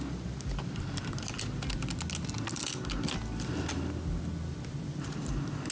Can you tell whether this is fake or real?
real